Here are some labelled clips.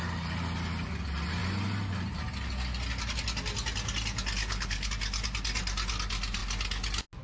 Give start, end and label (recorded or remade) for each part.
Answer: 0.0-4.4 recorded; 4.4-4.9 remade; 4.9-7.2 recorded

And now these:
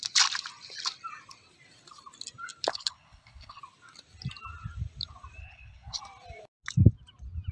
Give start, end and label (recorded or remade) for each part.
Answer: 0.0-2.7 recorded; 2.7-3.6 remade; 3.6-5.4 recorded; 5.4-6.0 remade; 6.0-7.5 recorded

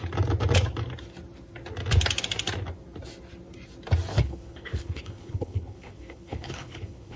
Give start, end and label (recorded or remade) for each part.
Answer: 0.0-4.1 recorded; 4.1-7.2 remade

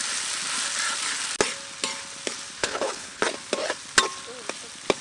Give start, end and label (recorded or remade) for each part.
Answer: 0.0-2.6 recorded; 2.6-3.2 remade; 3.2-5.0 recorded

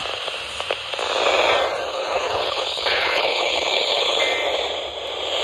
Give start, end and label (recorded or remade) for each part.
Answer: 0.0-1.9 recorded; 1.9-4.2 remade; 4.2-5.4 recorded

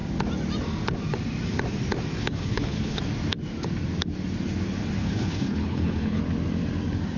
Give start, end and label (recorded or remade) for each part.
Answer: 0.0-2.2 recorded; 2.2-3.0 remade; 3.0-5.0 recorded; 5.0-6.2 remade; 6.2-7.2 recorded

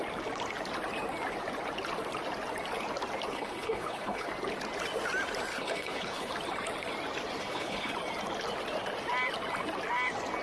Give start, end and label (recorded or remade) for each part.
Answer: 0.0-3.3 recorded; 3.3-4.3 remade; 4.3-5.5 recorded; 5.5-6.3 remade; 6.3-7.4 recorded; 7.4-7.9 remade; 7.9-10.4 recorded